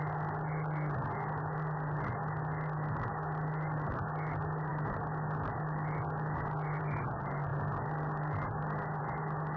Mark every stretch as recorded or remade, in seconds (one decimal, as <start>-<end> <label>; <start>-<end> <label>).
0.0-9.6 recorded